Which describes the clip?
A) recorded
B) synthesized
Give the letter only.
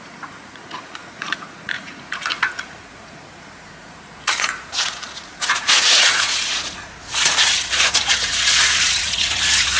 B